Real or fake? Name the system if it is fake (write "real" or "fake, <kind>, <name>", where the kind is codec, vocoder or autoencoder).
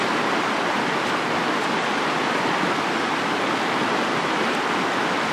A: real